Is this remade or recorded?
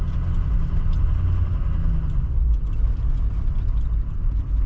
recorded